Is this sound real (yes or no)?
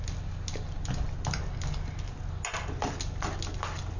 yes